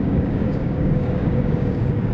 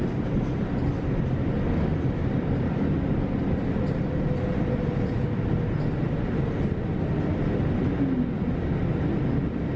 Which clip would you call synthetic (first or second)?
first